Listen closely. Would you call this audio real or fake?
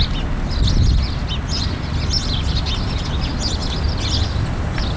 real